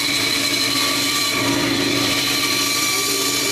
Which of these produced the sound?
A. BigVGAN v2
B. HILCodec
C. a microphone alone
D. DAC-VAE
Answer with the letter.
A